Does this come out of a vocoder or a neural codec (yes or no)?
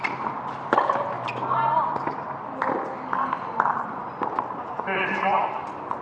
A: no